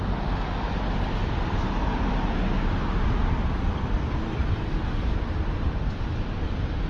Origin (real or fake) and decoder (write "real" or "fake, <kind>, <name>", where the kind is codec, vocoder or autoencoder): real